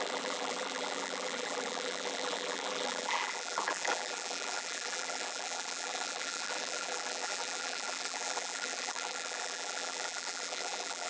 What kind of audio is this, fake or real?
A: fake